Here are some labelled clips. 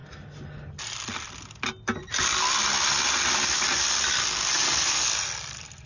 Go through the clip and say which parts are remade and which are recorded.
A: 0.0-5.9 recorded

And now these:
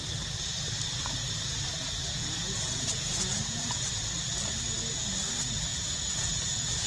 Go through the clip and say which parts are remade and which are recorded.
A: 0.0-2.0 recorded; 2.0-3.9 remade; 3.9-5.7 recorded; 5.7-6.9 remade

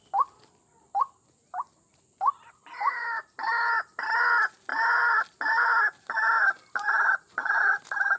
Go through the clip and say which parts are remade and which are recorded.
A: 0.0-8.2 recorded

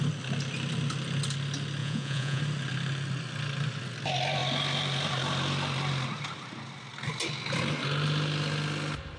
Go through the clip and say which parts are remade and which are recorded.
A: 0.0-1.8 recorded; 1.8-2.4 remade; 2.4-9.2 recorded

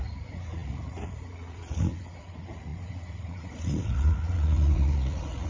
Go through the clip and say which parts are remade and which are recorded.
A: 0.0-5.5 remade

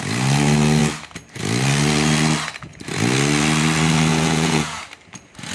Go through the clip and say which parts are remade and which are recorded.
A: 0.0-4.1 recorded; 4.1-4.8 remade; 4.8-5.5 recorded

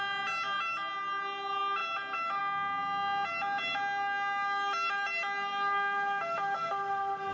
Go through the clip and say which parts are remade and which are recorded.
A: 0.0-7.3 recorded